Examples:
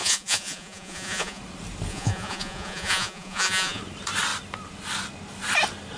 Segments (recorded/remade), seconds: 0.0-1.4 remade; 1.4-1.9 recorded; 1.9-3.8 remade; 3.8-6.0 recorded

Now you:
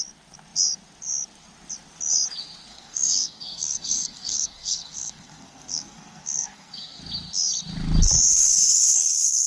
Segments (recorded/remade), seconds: 0.0-2.7 recorded; 2.7-7.0 remade; 7.0-8.3 recorded; 8.3-9.5 remade

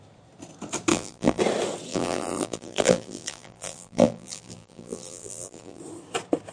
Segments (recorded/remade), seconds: 0.0-0.9 recorded; 0.9-1.4 remade; 1.4-1.9 recorded; 1.9-5.8 remade; 5.8-6.5 recorded

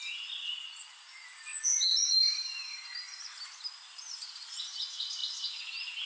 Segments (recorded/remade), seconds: 0.0-6.1 recorded